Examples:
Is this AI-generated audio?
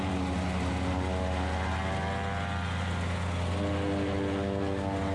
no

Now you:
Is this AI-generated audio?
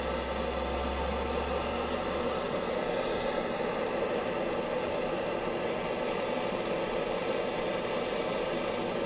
no